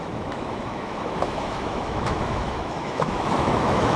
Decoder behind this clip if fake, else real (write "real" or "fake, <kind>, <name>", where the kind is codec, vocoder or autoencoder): fake, autoencoder, DAC-VAE